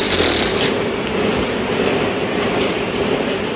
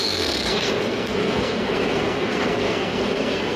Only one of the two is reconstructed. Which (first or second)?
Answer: second